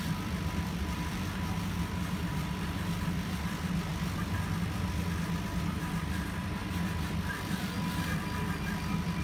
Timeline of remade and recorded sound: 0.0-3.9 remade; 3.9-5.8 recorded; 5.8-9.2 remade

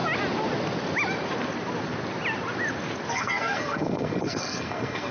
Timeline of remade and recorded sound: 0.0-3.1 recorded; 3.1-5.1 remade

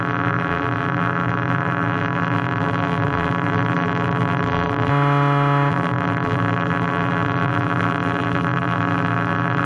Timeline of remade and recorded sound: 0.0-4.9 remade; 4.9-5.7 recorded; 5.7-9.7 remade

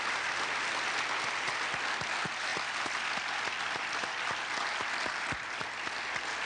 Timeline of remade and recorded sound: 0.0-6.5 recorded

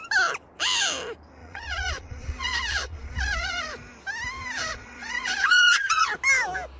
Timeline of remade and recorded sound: 0.0-1.4 recorded; 1.4-3.7 remade; 3.7-4.6 recorded; 4.6-6.1 remade; 6.1-6.8 recorded

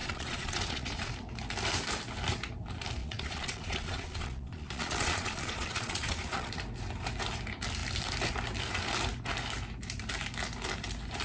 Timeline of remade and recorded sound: 0.0-1.1 remade; 1.1-3.0 recorded; 3.0-6.5 remade; 6.5-11.2 recorded

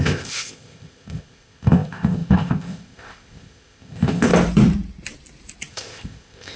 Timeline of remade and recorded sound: 0.0-4.3 remade; 4.3-5.7 recorded; 5.7-6.6 remade